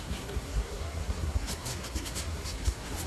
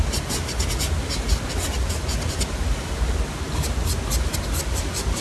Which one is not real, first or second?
first